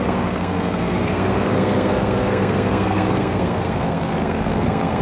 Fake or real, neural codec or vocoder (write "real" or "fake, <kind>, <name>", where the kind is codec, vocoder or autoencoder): fake, codec, SNAC